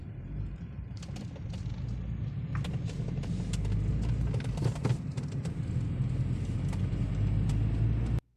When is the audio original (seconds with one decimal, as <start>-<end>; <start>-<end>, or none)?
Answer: 0.0-8.4